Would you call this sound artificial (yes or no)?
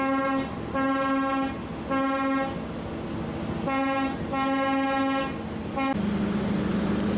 no